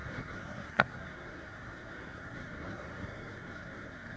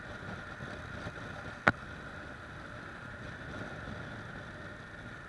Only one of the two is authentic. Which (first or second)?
second